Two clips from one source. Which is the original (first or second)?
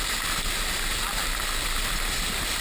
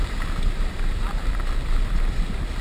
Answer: first